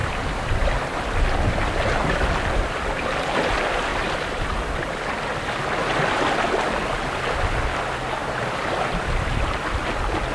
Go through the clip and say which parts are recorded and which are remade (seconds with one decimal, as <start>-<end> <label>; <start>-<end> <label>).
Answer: 0.0-1.2 remade; 1.2-3.9 recorded; 3.9-5.1 remade; 5.1-8.2 recorded; 8.2-9.7 remade; 9.7-10.3 recorded